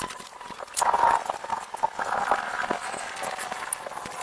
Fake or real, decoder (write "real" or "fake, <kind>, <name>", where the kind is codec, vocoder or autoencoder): real